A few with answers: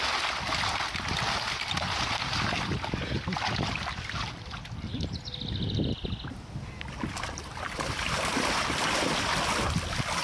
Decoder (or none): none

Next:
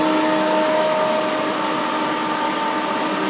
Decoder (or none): none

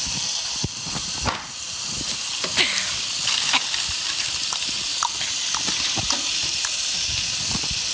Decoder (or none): none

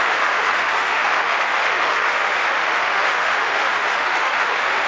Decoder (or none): autoencoder, DAC-VAE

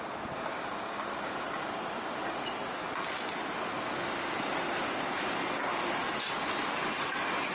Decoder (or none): none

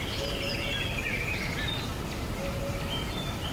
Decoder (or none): none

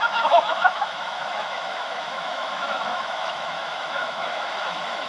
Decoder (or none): autoencoder, DAC-VAE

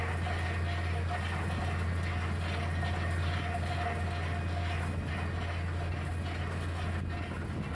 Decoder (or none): none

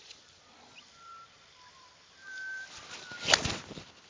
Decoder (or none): none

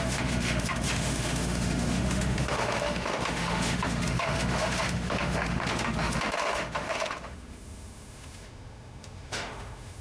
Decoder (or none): autoencoder, DAC-VAE